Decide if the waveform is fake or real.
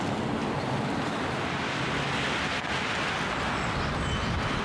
real